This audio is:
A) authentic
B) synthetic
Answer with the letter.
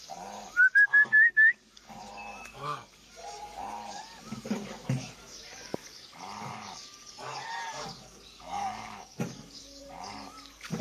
B